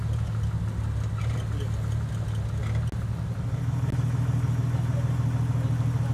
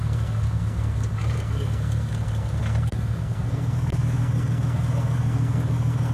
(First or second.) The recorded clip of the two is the first